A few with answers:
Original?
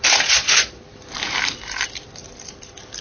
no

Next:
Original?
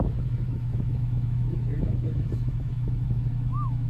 no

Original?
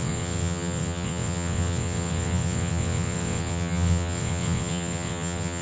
no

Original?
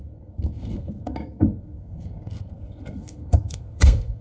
no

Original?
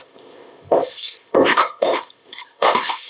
no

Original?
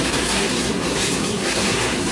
no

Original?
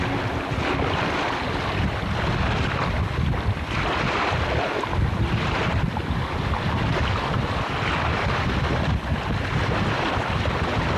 no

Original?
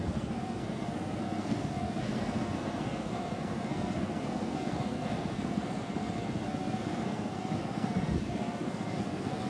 no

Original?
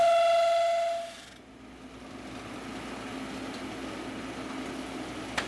yes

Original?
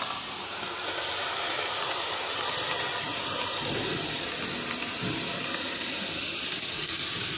yes